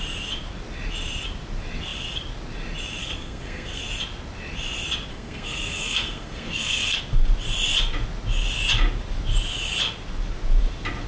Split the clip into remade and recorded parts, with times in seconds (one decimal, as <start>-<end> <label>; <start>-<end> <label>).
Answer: 0.0-3.0 recorded; 3.0-3.8 remade; 3.8-5.1 recorded; 5.1-7.0 remade; 7.0-11.1 recorded